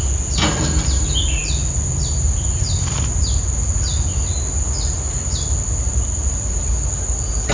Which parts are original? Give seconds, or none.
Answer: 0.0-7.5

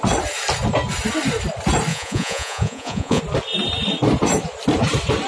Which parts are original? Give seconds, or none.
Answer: 0.0-1.9; 3.2-5.3

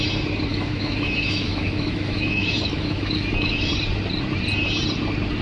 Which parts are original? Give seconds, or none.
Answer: 0.0-0.5; 3.7-5.4

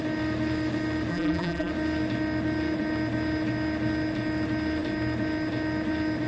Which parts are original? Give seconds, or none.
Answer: 0.0-1.1; 1.7-6.3

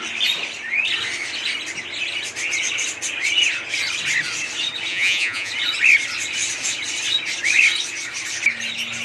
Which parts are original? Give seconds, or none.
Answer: 0.0-4.9; 5.5-9.0

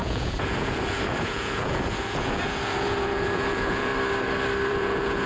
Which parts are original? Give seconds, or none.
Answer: 3.9-4.7

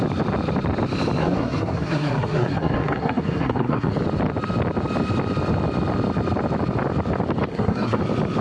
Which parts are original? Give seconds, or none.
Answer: 0.0-1.2; 3.9-7.5; 8.0-8.4

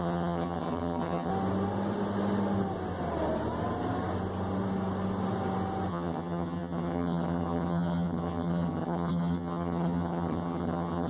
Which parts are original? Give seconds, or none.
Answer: 1.3-5.9